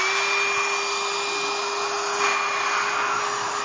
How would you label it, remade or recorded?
recorded